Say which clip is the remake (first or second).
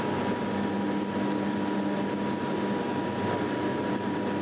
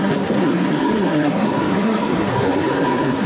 second